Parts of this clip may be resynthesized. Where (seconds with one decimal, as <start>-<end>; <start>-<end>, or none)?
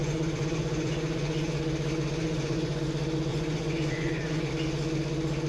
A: 0.0-1.5; 2.2-2.8; 3.3-4.5